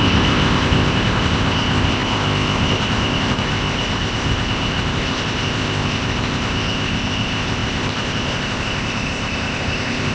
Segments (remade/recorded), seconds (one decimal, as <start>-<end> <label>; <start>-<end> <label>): 0.0-10.1 remade